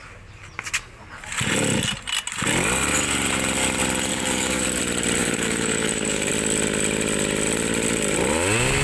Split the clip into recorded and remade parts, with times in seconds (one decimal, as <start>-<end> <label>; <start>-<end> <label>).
0.0-4.1 recorded; 4.1-4.8 remade; 4.8-5.2 recorded; 5.2-6.3 remade; 6.3-8.8 recorded